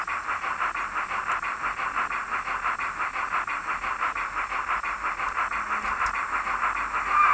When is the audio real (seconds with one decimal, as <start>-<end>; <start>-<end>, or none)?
0.0-7.3